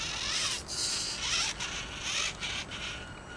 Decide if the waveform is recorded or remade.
recorded